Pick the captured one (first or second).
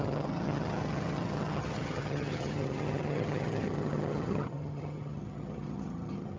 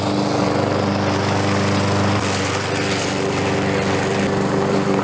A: second